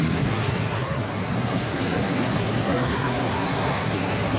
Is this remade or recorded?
remade